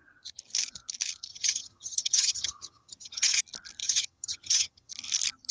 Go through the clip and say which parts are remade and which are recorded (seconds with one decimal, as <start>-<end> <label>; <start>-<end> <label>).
0.0-1.3 recorded; 1.3-3.4 remade; 3.4-3.8 recorded; 3.8-4.9 remade; 4.9-5.5 recorded